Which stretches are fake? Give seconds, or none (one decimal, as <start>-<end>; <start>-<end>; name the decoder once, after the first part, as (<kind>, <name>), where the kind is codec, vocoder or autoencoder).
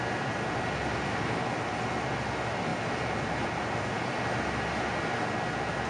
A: none